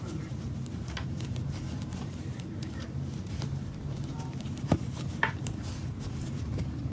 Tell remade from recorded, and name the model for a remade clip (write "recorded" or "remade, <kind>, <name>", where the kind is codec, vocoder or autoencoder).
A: remade, vocoder, BigVGAN v2